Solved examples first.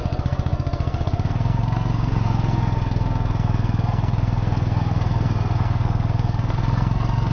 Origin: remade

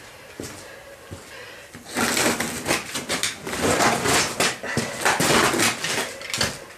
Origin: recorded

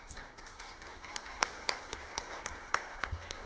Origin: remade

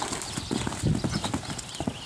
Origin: recorded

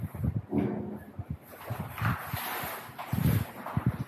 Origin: recorded